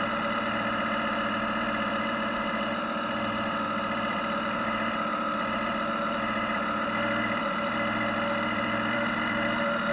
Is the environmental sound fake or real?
fake